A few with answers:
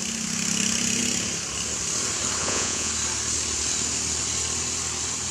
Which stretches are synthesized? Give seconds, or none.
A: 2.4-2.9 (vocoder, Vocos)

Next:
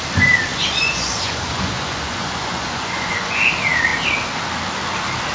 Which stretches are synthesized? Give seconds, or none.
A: 0.5-3.5 (vocoder, Vocos)

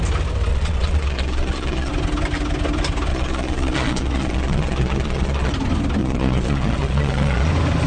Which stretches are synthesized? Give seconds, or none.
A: 0.5-1.9 (vocoder, Vocos); 3.1-5.5; 6.0-7.5

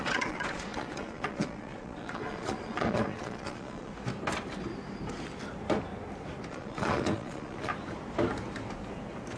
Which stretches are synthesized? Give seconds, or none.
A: 0.0-3.9 (vocoder, Vocos); 6.5-7.7

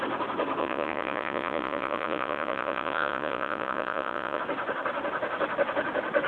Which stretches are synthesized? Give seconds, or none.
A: 0.6-4.4 (vocoder, Vocos)

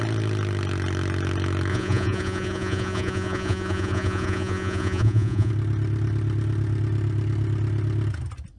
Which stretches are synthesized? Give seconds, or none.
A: 1.7-5.5 (vocoder, Vocos)

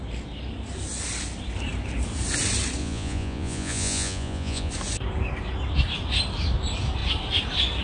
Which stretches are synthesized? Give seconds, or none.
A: 2.8-4.7 (vocoder, Vocos)

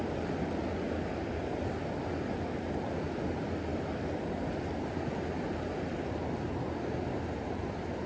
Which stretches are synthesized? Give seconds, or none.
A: none